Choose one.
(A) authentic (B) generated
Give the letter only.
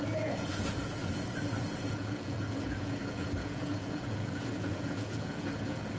B